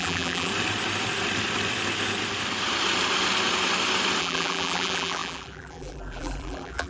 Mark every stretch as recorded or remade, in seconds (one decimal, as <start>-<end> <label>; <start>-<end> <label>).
0.0-0.5 remade; 0.5-4.2 recorded; 4.2-6.9 remade